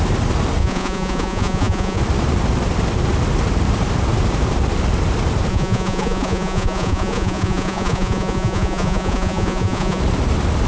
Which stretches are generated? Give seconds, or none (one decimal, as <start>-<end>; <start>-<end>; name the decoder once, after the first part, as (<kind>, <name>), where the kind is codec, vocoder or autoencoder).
0.6-2.0 (vocoder, Vocos); 5.5-10.0